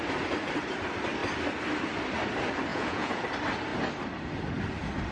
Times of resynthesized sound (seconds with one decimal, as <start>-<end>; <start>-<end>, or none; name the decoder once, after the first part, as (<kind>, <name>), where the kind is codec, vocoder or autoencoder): 2.7-3.2 (vocoder, Vocos)